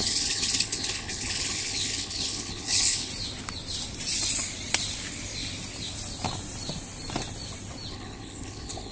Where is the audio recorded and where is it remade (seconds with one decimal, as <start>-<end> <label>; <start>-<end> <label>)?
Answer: 0.0-3.1 remade; 3.1-7.9 recorded; 7.9-8.9 remade